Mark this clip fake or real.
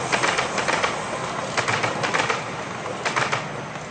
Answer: real